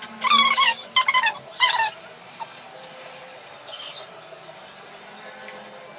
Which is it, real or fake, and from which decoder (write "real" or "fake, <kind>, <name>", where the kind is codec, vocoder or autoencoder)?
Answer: real